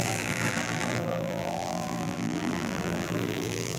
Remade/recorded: remade